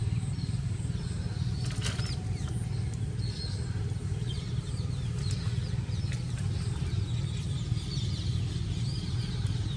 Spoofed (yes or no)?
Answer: no